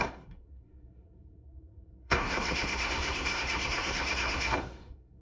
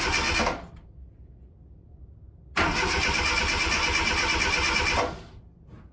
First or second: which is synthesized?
first